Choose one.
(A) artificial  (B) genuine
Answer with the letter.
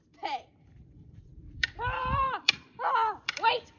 A